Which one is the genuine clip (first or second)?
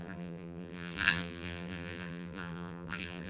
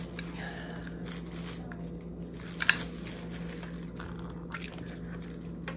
second